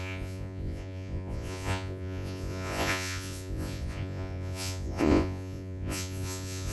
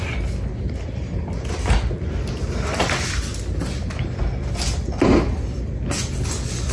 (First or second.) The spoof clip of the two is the first